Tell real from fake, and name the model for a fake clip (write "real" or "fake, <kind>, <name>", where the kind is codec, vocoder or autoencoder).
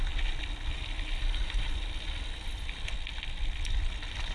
real